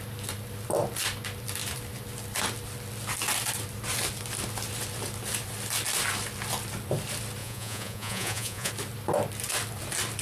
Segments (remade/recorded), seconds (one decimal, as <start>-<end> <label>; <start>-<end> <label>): 0.0-7.4 recorded; 7.4-8.7 remade; 8.7-10.2 recorded